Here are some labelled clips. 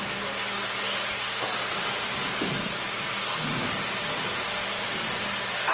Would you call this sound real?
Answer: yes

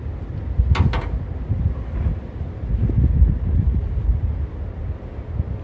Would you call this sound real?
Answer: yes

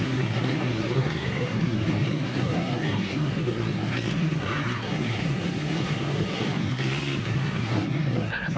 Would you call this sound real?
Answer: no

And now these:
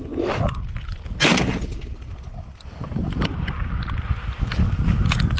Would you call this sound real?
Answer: yes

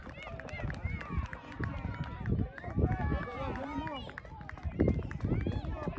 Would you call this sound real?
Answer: yes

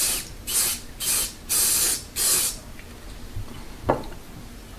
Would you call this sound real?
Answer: yes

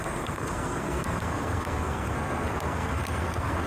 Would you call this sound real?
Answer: no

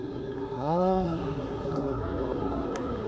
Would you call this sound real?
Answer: no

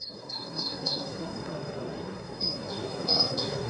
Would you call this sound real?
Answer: no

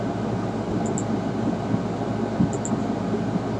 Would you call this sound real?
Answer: yes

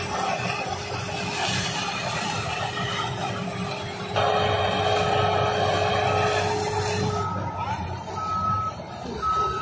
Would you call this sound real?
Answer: yes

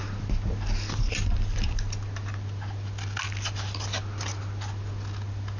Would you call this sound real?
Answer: yes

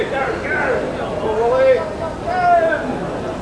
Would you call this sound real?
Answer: yes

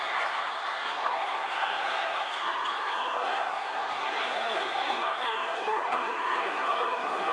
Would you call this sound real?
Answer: no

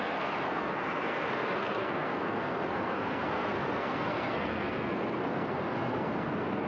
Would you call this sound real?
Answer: no